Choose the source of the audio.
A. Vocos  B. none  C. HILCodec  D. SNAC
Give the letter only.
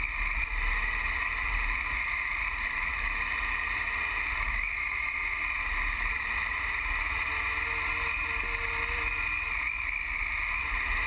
B